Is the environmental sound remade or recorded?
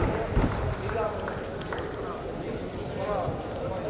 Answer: recorded